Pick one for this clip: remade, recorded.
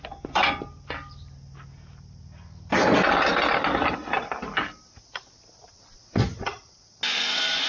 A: recorded